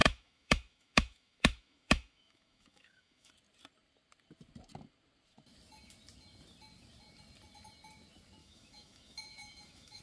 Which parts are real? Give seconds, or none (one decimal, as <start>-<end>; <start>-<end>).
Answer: 3.3-8.4